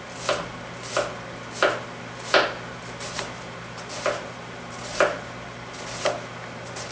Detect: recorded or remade recorded